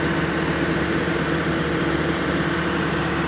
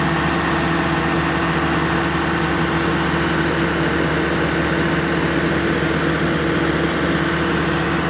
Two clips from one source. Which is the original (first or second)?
second